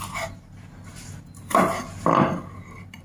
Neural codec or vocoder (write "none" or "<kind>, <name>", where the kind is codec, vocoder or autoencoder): none